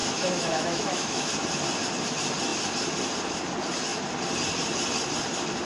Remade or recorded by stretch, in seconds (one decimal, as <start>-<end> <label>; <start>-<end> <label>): 0.0-1.3 remade; 1.3-5.6 recorded